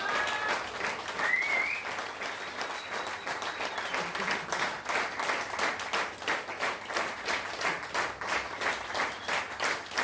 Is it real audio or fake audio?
real